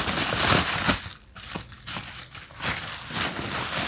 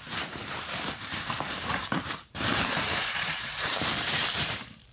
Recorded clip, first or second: first